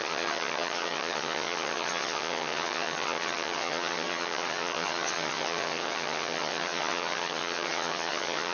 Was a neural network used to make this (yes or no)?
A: yes